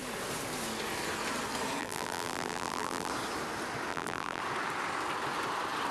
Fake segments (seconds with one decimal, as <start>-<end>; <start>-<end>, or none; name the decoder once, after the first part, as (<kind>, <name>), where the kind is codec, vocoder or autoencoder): 1.8-3.1 (vocoder, BigVGAN v2); 3.9-4.4